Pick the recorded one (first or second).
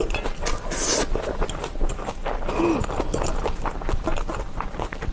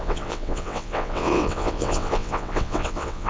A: first